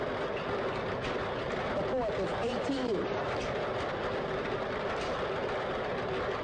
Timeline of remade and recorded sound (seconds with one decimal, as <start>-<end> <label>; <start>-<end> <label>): 0.0-2.4 recorded; 2.4-3.4 remade; 3.4-6.4 recorded